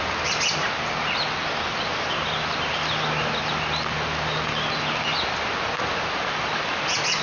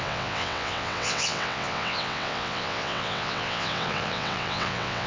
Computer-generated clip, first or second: second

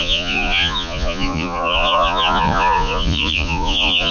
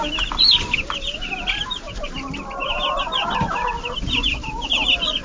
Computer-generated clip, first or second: first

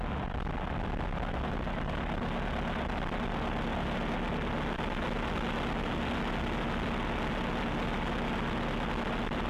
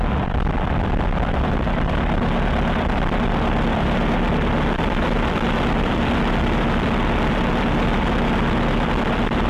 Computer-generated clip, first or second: second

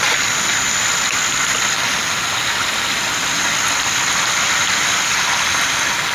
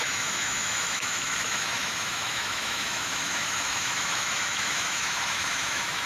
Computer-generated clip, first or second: second